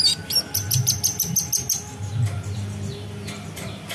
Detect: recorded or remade recorded